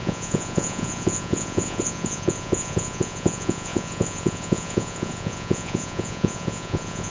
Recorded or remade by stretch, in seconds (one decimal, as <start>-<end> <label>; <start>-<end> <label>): 0.0-7.1 remade